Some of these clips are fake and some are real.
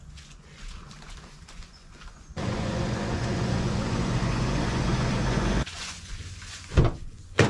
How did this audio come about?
fake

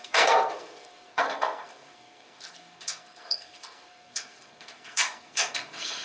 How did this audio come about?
fake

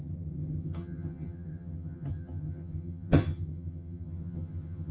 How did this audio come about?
fake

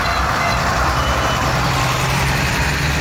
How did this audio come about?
fake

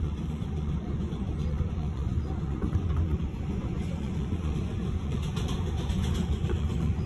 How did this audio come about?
fake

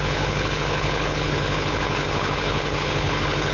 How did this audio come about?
fake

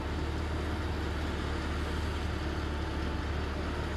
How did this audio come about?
real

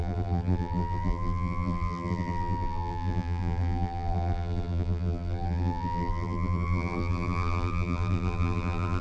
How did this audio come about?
fake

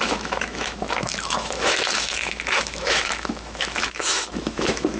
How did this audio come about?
fake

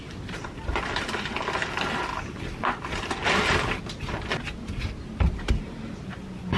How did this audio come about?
real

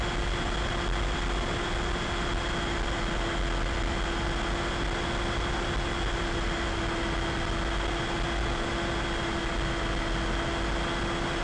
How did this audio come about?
real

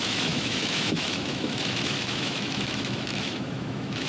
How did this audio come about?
fake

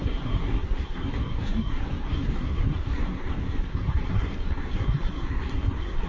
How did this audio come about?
fake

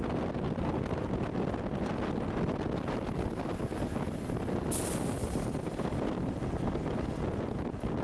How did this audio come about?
real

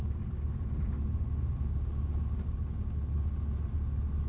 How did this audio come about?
real